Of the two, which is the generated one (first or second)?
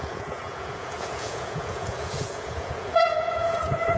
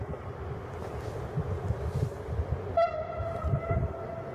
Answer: first